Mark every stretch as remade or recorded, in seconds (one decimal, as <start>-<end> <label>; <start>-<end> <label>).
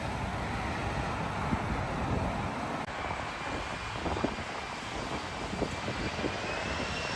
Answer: 0.0-7.2 recorded